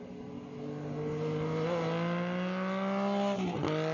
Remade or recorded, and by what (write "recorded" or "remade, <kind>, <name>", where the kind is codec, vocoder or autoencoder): recorded